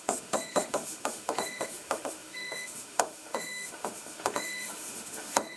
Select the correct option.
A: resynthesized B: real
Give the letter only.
A